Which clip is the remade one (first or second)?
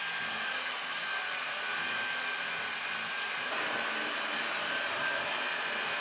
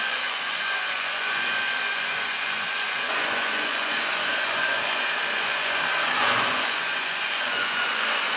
second